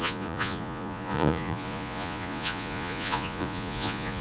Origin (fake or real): fake